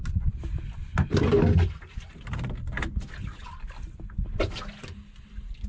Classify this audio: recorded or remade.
recorded